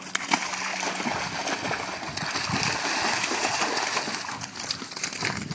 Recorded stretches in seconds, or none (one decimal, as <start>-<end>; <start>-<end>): 0.0-5.5

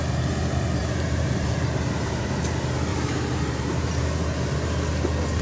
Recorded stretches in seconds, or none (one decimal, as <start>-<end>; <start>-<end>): 0.0-0.8; 2.4-2.9; 3.9-5.4

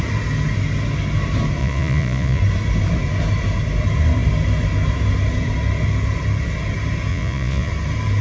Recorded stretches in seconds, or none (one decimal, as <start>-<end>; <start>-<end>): 0.0-1.6; 2.4-7.1; 7.7-8.2

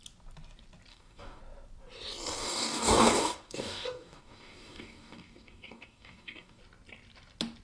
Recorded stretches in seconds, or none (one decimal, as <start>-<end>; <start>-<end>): 0.0-0.9; 1.4-2.4; 6.6-7.6

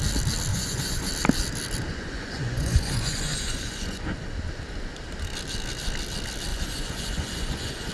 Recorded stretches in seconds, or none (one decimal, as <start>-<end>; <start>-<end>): 0.0-0.5; 1.1-1.9; 4.1-6.5

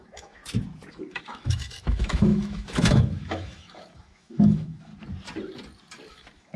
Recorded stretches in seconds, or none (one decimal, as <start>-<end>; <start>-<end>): 0.4-0.9; 4.9-6.1

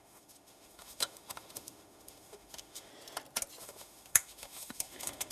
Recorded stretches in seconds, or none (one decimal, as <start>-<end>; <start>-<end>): 2.9-3.6

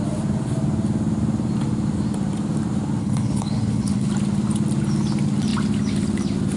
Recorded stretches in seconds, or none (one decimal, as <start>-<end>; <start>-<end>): 0.0-3.0; 4.1-6.6